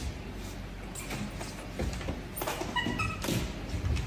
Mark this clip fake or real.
real